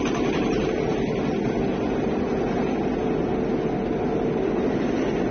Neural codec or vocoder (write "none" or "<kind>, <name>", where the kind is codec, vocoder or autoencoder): none